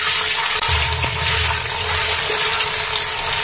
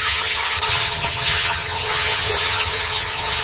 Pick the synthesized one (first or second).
second